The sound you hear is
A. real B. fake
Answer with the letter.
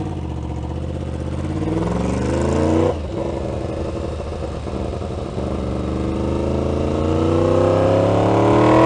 A